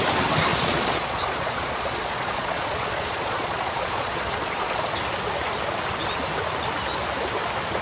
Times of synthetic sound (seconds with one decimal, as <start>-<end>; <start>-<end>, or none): 0.5-4.8